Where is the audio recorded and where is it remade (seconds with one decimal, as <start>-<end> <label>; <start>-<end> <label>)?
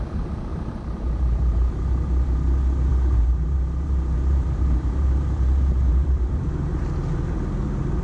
0.0-0.5 recorded; 0.5-1.7 remade; 1.7-2.9 recorded; 2.9-6.8 remade; 6.8-8.0 recorded